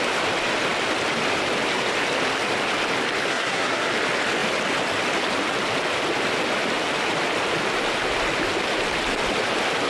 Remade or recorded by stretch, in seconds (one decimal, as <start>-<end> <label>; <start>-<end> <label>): 0.0-3.3 recorded; 3.3-3.9 remade; 3.9-9.9 recorded